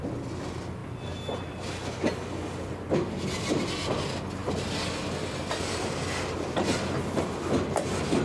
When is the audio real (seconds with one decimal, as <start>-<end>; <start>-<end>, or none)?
0.0-8.2